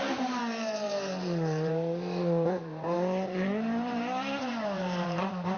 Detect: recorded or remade remade